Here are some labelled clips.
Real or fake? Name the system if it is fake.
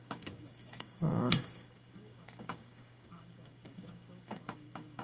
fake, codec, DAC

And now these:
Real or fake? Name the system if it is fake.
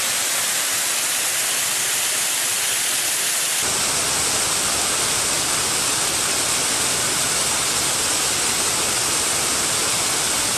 real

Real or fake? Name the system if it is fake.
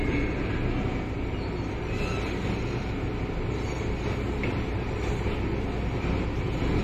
real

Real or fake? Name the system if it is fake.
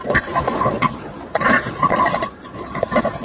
fake, vocoder, Vocos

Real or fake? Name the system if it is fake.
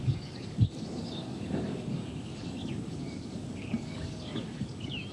fake, codec, DAC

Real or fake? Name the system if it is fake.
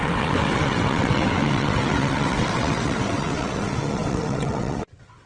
fake, vocoder, WaveNeXt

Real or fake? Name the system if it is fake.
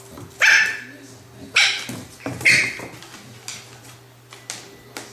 real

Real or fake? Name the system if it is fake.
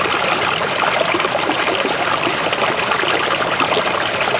fake, vocoder, BigVGAN v2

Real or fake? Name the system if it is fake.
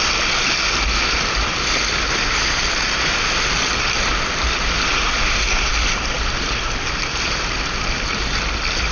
real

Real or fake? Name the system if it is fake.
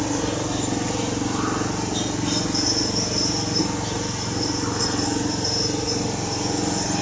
real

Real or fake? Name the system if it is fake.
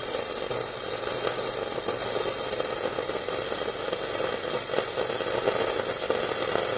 real